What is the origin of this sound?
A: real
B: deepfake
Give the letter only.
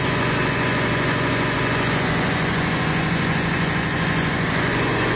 B